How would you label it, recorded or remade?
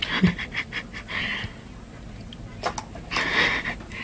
recorded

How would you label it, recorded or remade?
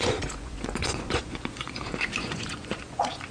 remade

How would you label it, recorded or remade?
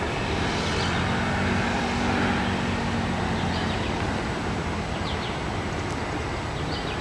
recorded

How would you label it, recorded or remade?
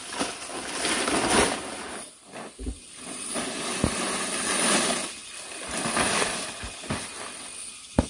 recorded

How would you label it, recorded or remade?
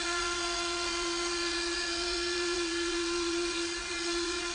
remade